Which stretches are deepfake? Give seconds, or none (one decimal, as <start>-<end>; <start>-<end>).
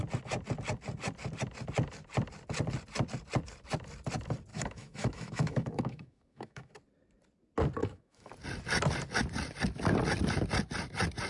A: 4.5-6.7; 7.8-8.3